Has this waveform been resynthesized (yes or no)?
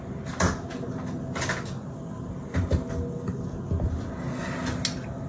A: no